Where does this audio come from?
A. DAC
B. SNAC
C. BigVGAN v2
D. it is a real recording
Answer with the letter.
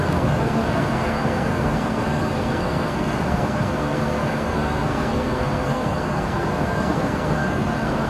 B